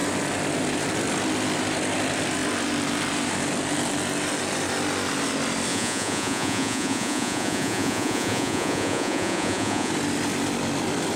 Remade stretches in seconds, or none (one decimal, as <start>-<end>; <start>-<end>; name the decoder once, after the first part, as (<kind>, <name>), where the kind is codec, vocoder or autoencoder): 5.7-9.9 (vocoder, Vocos)